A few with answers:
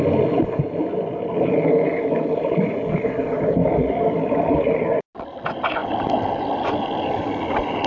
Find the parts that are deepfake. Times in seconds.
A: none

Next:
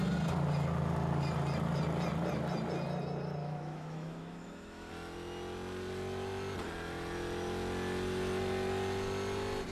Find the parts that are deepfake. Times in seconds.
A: 3.4-4.9 (autoencoder, DAC-VAE)